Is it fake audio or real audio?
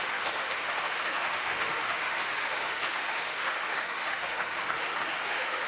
fake